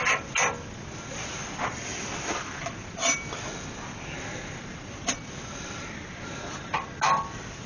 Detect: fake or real real